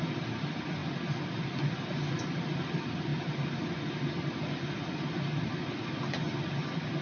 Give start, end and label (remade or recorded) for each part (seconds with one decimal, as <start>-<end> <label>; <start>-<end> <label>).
0.0-7.0 recorded